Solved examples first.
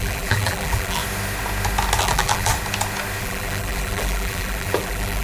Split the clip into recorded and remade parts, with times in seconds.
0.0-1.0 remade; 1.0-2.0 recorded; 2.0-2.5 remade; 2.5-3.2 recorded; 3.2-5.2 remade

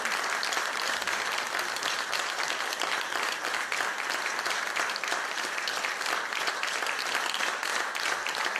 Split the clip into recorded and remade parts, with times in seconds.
0.0-3.9 recorded; 3.9-4.6 remade; 4.6-8.6 recorded

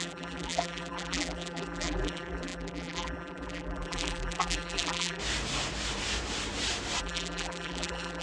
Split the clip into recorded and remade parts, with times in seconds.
0.0-5.2 remade; 5.2-7.0 recorded; 7.0-8.2 remade

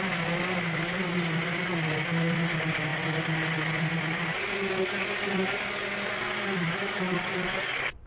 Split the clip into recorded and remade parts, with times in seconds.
0.0-6.8 recorded; 6.8-8.1 remade

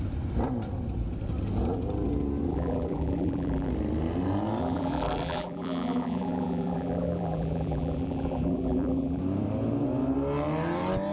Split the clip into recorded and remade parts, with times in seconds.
0.0-2.5 recorded; 2.5-3.7 remade; 3.7-4.6 recorded; 4.6-9.2 remade; 9.2-11.1 recorded

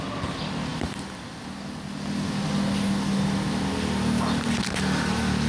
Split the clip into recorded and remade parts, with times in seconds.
0.0-0.7 recorded; 0.7-1.4 remade; 1.4-5.5 recorded